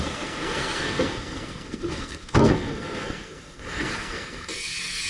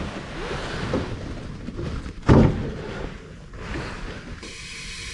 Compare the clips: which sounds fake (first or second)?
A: first